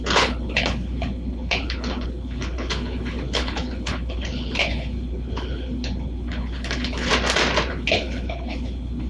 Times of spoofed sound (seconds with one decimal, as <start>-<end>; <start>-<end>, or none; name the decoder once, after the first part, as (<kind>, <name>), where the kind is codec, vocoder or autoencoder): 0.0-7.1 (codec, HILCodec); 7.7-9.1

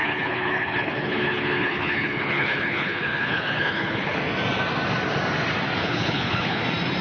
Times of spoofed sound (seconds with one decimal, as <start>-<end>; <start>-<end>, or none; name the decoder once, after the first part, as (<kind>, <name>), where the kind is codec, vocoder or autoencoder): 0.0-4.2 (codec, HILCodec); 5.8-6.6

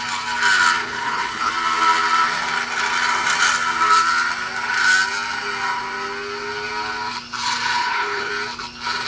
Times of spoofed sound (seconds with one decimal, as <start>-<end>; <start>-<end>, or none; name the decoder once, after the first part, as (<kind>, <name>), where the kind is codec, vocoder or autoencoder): 0.8-1.5 (codec, HILCodec); 7.8-8.3

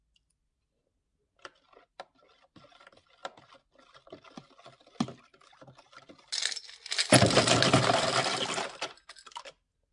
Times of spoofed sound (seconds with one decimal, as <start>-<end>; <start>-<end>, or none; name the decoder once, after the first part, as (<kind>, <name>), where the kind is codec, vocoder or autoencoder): none

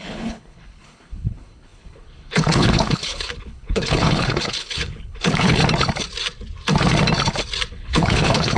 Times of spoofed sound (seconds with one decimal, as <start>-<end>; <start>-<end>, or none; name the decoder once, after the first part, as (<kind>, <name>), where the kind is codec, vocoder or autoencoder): 0.0-5.6 (codec, HILCodec); 7.7-8.6

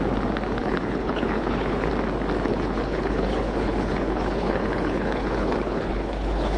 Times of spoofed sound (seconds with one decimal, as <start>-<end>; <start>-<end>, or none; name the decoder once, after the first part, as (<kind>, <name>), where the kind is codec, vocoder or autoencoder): 0.6-1.9 (codec, HILCodec); 2.5-6.6

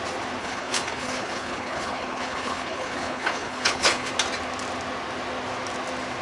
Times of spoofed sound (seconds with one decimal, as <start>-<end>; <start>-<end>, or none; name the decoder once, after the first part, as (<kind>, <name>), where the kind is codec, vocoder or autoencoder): 0.4-4.1 (codec, HILCodec)

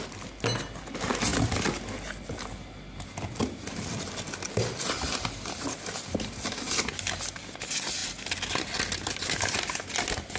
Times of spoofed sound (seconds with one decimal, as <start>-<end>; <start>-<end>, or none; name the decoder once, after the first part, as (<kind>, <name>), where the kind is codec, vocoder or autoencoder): none